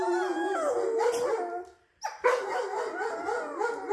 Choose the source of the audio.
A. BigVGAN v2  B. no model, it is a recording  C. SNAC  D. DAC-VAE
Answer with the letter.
B